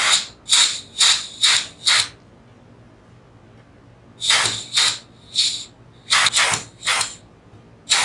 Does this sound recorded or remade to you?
recorded